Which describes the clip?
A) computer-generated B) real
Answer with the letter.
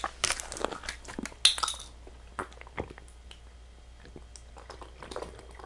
B